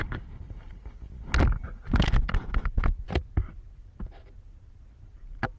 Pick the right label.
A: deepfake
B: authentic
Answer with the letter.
B